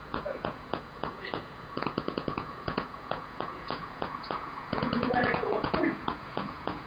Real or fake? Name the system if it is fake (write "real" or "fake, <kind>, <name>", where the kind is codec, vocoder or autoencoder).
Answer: fake, vocoder, Vocos